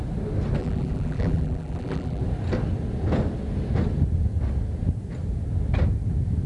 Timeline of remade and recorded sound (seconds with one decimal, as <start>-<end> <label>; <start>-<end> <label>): 0.0-0.6 recorded; 0.6-2.2 remade; 2.2-6.5 recorded